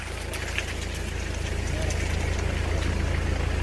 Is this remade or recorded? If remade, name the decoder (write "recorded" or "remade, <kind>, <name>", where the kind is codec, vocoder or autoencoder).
recorded